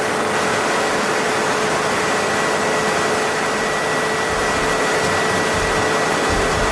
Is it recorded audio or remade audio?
recorded